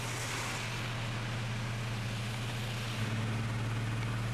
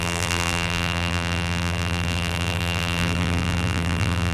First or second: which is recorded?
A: first